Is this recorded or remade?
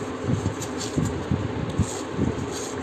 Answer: recorded